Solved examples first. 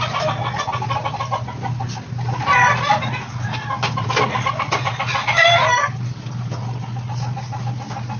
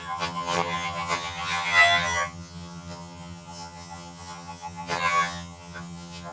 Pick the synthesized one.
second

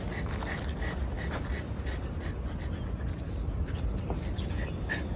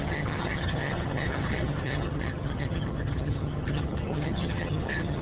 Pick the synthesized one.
second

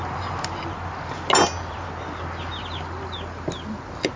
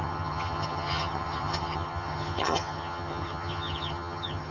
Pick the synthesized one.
second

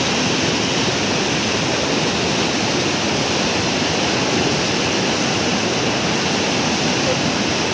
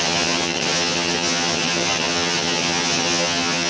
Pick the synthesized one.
second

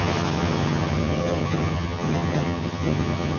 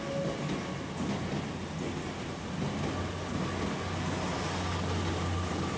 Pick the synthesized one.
first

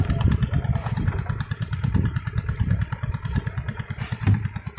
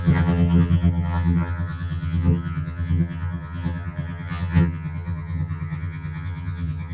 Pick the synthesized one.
second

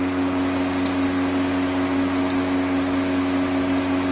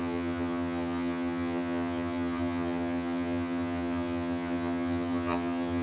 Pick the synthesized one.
second